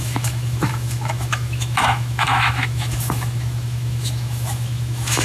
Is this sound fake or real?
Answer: fake